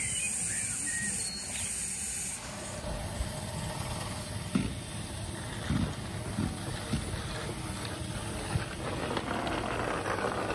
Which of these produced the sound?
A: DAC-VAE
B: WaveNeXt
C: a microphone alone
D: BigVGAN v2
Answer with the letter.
C